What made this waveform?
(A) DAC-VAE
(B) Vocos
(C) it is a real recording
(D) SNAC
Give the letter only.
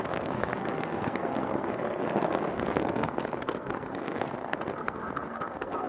D